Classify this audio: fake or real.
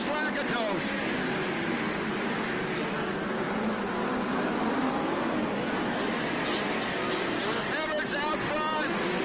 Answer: real